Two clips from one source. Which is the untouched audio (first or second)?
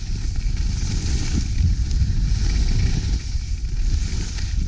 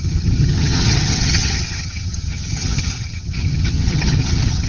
first